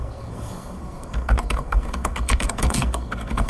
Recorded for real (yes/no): no